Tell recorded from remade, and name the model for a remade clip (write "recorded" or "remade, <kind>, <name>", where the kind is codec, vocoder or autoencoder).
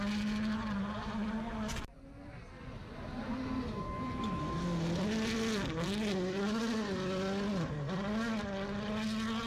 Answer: recorded